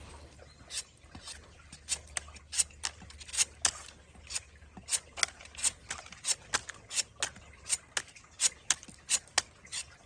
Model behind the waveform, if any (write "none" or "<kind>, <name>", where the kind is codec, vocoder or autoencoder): none